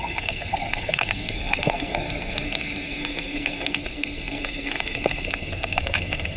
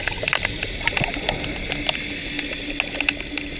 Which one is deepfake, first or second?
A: first